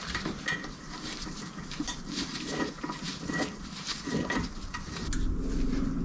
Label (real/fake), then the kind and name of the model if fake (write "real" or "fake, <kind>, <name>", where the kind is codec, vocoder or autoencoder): real